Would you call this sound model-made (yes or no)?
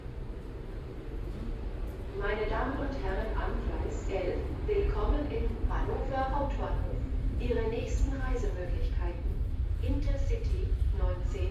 yes